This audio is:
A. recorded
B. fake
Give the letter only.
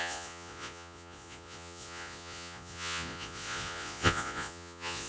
B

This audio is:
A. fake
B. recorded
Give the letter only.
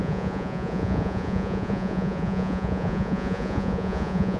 A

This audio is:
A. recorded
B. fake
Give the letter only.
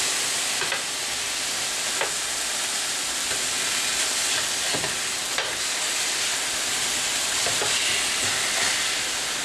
A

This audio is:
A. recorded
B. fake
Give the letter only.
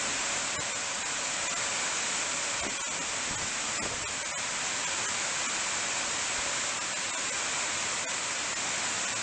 A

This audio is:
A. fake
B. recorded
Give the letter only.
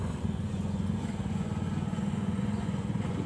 A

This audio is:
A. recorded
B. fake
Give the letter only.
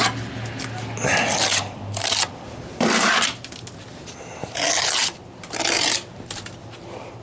A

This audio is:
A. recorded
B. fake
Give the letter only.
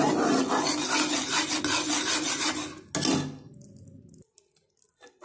A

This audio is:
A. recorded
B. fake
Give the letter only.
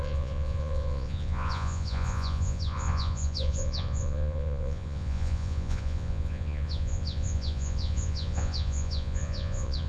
B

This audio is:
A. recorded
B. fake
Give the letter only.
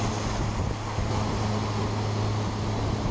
A